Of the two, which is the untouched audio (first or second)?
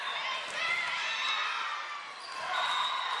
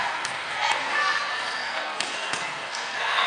first